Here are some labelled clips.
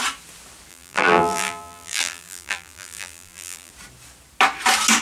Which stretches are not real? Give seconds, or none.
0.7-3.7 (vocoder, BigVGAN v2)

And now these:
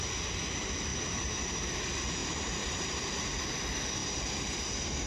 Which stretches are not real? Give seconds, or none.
0.9-1.8 (vocoder, BigVGAN v2); 2.2-3.1; 4.0-4.6

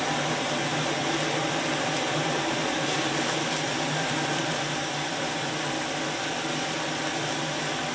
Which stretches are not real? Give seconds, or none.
1.0-5.7 (vocoder, BigVGAN v2)

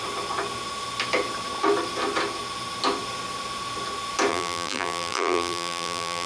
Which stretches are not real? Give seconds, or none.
4.3-6.3 (vocoder, BigVGAN v2)